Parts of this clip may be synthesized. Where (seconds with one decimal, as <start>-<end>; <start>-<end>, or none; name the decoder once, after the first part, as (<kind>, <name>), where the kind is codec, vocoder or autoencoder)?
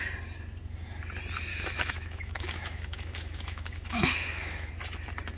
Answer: 1.5-4.7 (autoencoder, DAC-VAE)